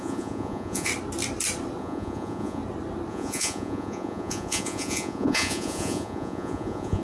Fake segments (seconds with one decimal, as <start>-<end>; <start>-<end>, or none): 0.0-0.9; 1.8-2.6; 3.1-7.0